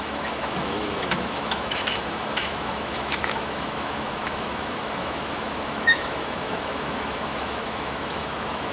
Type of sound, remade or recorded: remade